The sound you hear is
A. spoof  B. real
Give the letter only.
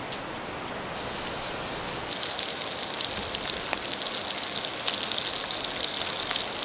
B